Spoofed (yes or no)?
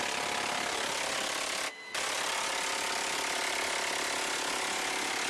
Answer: no